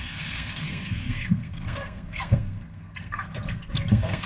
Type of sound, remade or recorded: remade